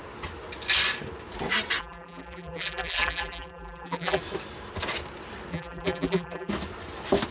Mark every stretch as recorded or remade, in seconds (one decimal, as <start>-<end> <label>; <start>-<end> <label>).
0.0-1.8 recorded; 1.8-4.2 remade; 4.2-5.5 recorded; 5.5-6.5 remade; 6.5-7.3 recorded